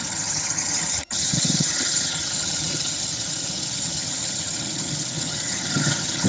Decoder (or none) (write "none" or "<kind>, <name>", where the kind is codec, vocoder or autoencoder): vocoder, HiFi-GAN